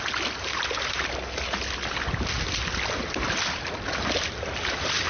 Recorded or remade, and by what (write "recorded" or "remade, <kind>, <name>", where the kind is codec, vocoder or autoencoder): recorded